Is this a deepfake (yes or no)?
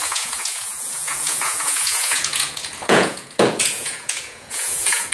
yes